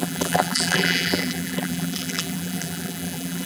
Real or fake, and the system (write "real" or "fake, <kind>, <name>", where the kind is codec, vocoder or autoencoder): fake, vocoder, BigVGAN v2